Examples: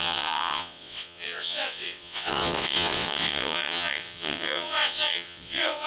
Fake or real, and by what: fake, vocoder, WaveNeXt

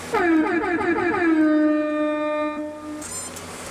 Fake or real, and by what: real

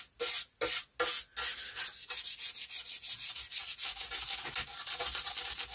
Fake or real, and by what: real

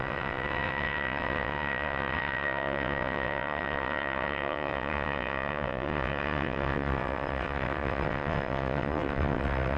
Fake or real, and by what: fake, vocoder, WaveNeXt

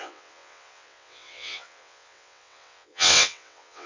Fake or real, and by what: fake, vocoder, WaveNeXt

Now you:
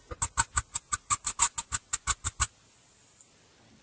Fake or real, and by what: real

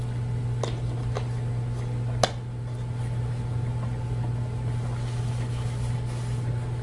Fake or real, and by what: real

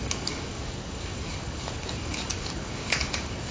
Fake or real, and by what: fake, codec, DAC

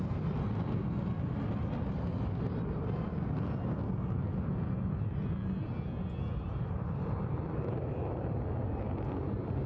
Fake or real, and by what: real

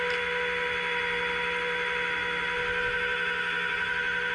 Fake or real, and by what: real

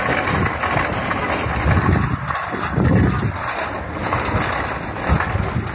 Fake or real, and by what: real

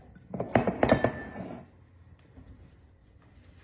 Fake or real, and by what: real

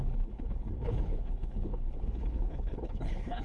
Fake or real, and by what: fake, codec, HILCodec